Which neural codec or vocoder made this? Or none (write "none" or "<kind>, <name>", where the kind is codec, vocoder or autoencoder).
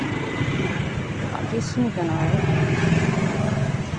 none